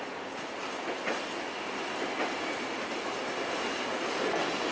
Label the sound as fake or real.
real